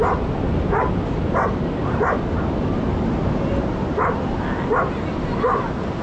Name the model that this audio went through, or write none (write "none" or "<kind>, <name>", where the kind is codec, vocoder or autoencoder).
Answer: none